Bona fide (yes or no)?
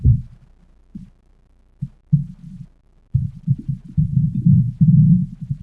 no